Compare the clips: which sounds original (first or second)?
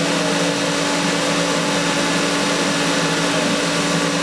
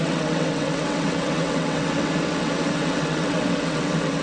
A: first